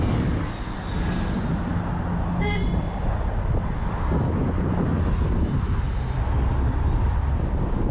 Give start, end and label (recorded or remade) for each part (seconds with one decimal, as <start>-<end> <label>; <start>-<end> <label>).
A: 0.0-7.9 recorded